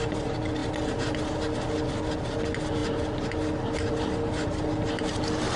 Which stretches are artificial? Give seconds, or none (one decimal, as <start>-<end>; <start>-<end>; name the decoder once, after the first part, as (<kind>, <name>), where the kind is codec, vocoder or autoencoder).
none